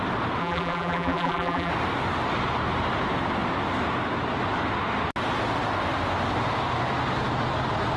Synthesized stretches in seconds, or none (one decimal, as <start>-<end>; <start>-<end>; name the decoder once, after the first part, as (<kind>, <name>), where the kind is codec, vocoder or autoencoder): 0.4-1.7 (vocoder, BigVGAN v2)